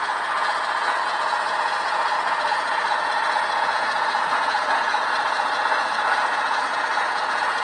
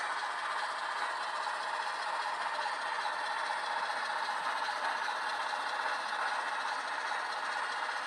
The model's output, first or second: first